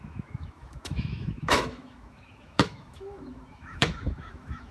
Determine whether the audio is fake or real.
fake